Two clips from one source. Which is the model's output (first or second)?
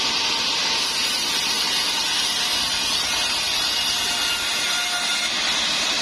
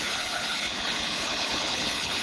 second